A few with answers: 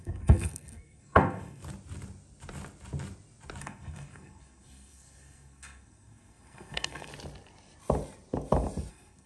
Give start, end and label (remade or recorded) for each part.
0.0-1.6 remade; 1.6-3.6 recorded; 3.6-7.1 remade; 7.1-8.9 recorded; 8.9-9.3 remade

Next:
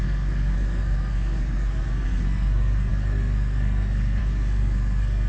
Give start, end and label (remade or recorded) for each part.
0.0-5.3 remade

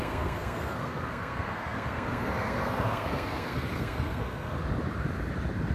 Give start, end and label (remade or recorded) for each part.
0.0-4.6 remade; 4.6-5.7 recorded

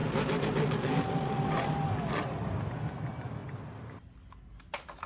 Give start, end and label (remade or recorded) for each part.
0.0-2.8 remade; 2.8-3.4 recorded; 3.4-4.0 remade; 4.0-5.1 recorded

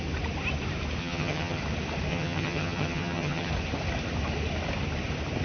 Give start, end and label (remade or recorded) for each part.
0.0-1.0 recorded; 1.0-1.6 remade; 1.6-2.1 recorded; 2.1-3.5 remade; 3.5-5.4 recorded

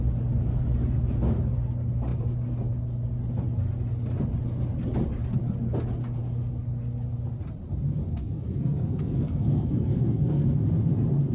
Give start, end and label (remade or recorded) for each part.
0.0-8.1 recorded; 8.1-10.6 remade; 10.6-11.3 recorded

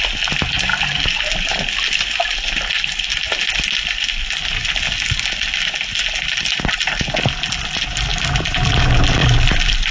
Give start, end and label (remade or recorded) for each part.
0.0-8.1 recorded; 8.1-8.7 remade; 8.7-9.2 recorded; 9.2-9.9 remade